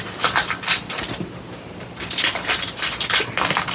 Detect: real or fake real